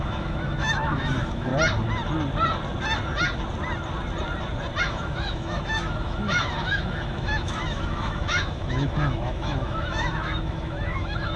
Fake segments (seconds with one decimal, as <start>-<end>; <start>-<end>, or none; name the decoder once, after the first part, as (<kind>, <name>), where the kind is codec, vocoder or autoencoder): 0.0-1.5 (autoencoder, DAC-VAE); 4.8-11.4